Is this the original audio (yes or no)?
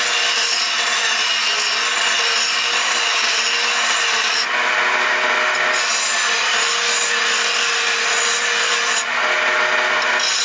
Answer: yes